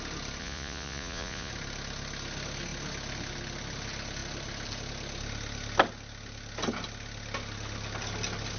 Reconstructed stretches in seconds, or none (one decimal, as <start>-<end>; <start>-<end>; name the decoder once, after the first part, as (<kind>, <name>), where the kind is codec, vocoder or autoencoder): 0.4-1.5 (vocoder, Vocos)